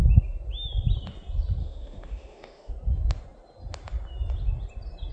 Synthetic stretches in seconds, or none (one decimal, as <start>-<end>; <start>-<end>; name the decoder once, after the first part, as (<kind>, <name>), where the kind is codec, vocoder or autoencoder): 1.6-2.7 (autoencoder, DAC-VAE)